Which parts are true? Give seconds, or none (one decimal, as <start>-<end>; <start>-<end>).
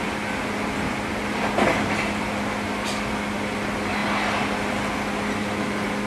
0.0-6.1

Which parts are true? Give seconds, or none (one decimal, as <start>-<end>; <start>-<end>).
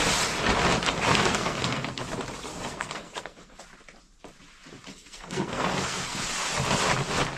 0.0-1.1; 2.0-2.5; 3.6-4.9; 6.2-7.4